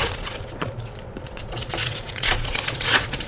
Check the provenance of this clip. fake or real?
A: fake